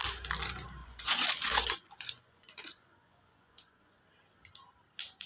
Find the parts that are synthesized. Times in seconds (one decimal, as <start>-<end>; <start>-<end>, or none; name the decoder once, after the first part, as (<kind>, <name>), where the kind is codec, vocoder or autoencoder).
0.8-4.0 (vocoder, Vocos)